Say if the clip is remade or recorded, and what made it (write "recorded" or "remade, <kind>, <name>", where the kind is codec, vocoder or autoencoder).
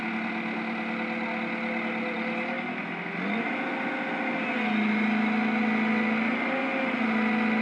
recorded